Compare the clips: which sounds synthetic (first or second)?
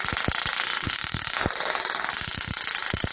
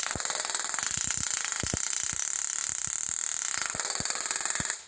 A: first